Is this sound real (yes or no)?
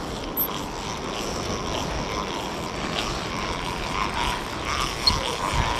yes